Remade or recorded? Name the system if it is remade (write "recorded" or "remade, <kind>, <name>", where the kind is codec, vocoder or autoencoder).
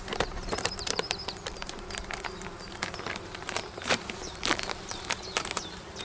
remade, vocoder, BigVGAN v2